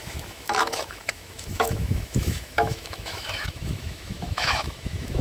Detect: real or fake fake